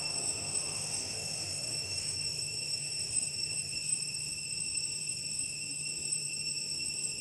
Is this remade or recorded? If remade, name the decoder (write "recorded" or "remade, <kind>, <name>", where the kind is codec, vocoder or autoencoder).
remade, autoencoder, DAC-VAE